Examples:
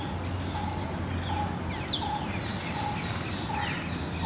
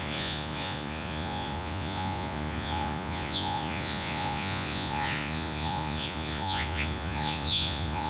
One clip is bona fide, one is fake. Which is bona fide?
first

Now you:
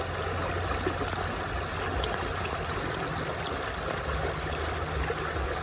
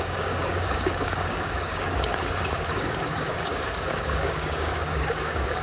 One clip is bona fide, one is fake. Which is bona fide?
first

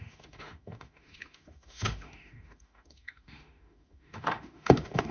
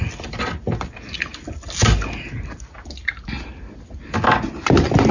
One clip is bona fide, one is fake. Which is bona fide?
second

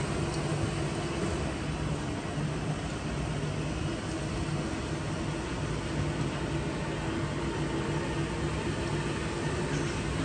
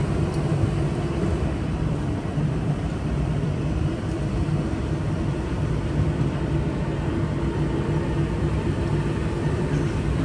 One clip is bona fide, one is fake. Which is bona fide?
first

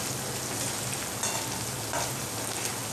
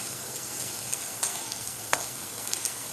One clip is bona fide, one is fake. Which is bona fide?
first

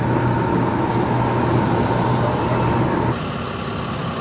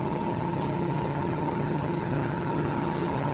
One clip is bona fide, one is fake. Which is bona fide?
first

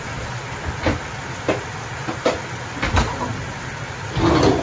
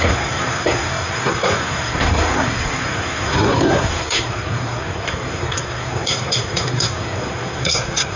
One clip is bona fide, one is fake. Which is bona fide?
first